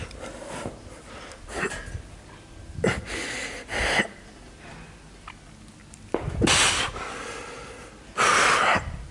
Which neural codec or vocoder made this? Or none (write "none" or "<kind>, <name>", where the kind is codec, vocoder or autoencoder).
none